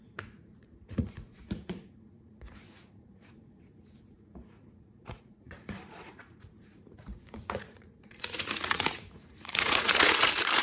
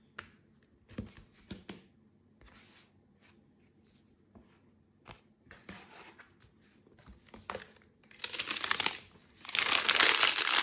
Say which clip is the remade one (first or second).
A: first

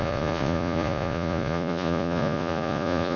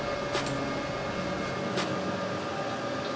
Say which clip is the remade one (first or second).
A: first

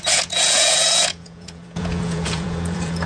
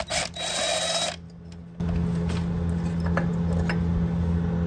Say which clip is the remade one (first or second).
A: first